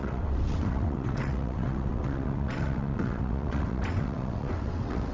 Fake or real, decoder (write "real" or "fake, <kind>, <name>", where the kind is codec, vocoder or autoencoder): fake, vocoder, WaveNeXt